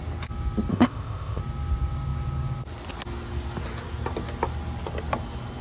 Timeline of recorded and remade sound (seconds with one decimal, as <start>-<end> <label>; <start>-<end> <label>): 0.0-0.7 recorded; 0.7-1.4 remade; 1.4-5.6 recorded